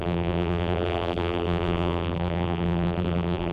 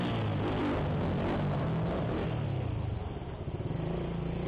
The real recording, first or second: second